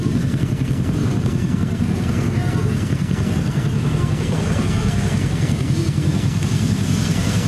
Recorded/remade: remade